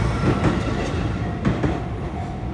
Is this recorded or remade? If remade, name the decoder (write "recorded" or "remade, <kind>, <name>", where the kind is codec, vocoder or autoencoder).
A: recorded